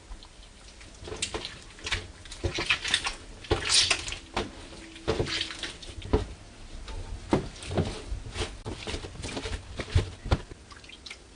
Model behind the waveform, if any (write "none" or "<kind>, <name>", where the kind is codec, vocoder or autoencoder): none